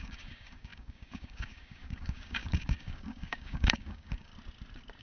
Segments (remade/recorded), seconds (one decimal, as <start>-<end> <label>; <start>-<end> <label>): 0.0-4.3 remade; 4.3-5.0 recorded